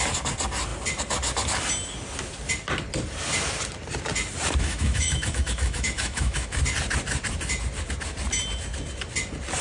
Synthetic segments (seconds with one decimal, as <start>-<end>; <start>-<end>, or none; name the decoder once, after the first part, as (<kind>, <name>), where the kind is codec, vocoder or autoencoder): 4.6-6.6 (autoencoder, DAC-VAE)